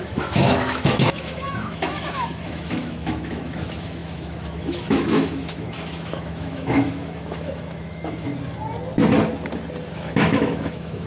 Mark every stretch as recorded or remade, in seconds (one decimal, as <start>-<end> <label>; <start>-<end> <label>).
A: 0.0-8.3 remade; 8.3-9.9 recorded; 9.9-11.1 remade